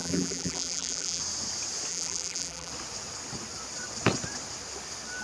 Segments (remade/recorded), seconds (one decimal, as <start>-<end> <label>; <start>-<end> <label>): 0.0-1.2 remade; 1.2-1.9 recorded; 1.9-2.7 remade; 2.7-5.2 recorded